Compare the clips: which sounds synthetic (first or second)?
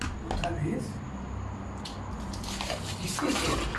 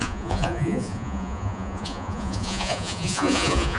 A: second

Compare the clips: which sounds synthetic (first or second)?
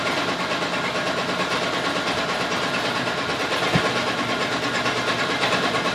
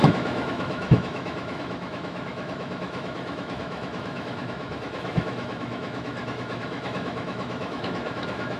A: second